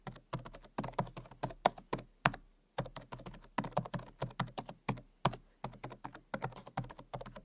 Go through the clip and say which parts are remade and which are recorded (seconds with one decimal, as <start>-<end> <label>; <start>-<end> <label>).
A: 0.0-7.4 recorded